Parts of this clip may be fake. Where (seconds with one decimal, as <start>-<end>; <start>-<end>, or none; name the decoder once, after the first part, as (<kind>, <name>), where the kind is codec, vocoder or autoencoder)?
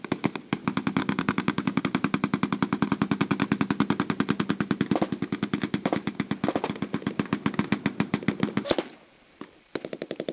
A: 1.0-1.8 (codec, DAC)